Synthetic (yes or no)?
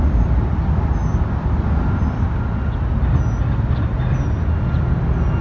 no